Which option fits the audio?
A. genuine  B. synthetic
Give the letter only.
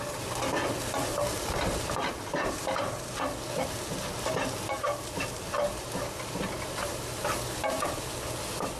A